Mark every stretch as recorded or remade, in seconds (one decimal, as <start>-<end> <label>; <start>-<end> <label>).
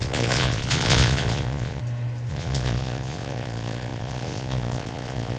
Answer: 0.0-1.8 remade; 1.8-2.3 recorded; 2.3-5.4 remade